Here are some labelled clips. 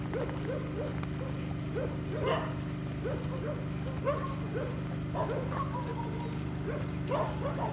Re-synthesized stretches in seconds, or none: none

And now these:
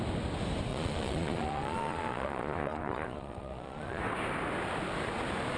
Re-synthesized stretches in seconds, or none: 0.7-4.0 (vocoder, Vocos)

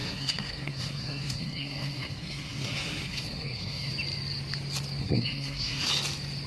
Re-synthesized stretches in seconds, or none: 0.0-3.9 (codec, SNAC); 5.0-5.9

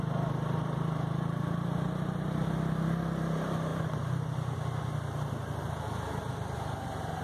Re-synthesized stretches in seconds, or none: none

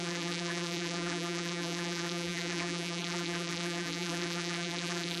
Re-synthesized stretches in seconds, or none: 0.0-5.2 (vocoder, BigVGAN v2)

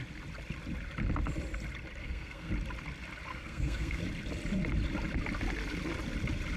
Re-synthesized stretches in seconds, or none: 2.0-2.5 (codec, SNAC); 3.3-4.0

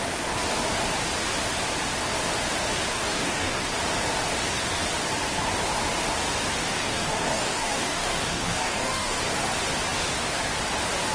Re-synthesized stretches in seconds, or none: 2.9-3.6 (codec, DAC); 6.8-9.2

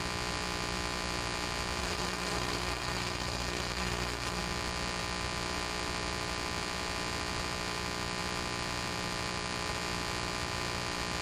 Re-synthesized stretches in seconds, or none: 1.8-4.4 (codec, SNAC)